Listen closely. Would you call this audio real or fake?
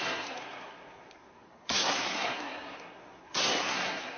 fake